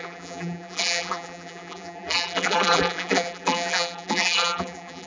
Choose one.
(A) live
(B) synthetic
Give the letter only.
B